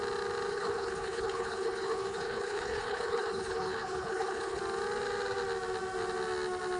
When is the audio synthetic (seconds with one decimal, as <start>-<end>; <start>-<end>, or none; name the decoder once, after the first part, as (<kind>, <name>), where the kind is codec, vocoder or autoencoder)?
0.5-4.6 (codec, HILCodec)